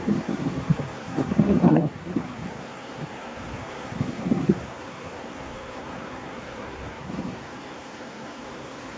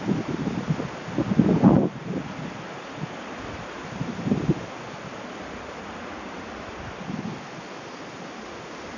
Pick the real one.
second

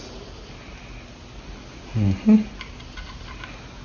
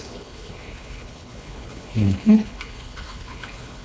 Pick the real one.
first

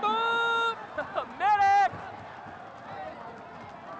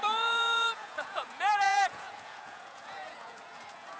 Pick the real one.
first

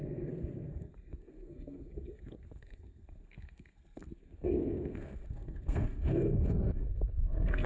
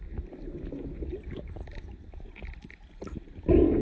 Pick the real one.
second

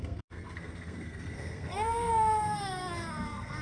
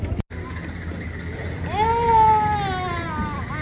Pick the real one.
second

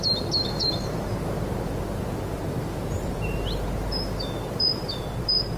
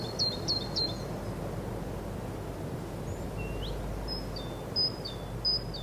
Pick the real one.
second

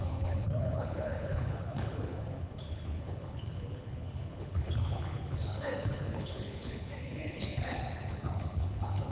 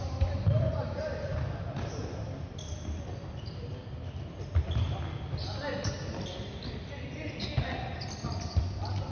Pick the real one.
second